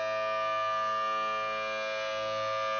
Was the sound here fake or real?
real